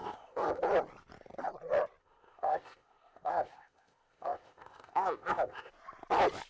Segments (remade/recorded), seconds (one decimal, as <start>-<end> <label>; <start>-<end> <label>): 0.0-0.6 remade; 0.6-2.0 recorded; 2.0-5.7 remade; 5.7-6.5 recorded